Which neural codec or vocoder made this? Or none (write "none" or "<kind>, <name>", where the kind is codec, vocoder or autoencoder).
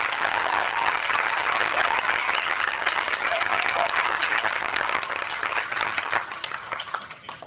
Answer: vocoder, HiFi-GAN